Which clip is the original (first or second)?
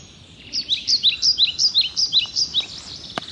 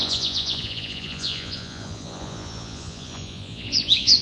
first